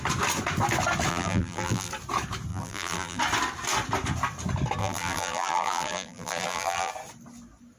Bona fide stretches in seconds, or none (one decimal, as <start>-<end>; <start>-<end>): 0.0-1.1; 1.9-2.5; 3.2-4.8; 6.9-7.8

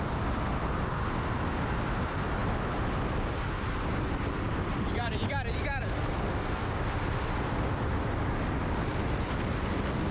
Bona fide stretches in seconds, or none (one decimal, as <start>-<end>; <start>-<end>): 0.0-10.1

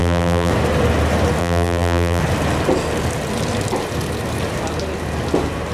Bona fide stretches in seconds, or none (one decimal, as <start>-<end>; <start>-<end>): 0.5-1.4; 2.2-5.7

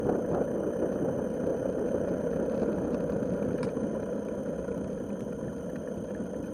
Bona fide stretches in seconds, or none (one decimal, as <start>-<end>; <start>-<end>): 0.0-1.5; 2.2-6.5